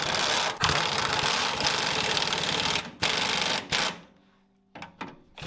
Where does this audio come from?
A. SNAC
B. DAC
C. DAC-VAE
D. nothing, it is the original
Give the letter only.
D